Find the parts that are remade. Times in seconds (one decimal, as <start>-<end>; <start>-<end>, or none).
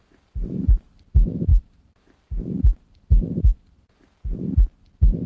none